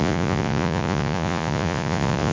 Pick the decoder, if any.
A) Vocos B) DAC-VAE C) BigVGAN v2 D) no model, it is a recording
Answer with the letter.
A